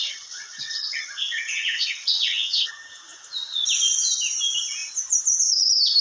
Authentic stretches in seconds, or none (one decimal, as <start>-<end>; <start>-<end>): 2.7-6.0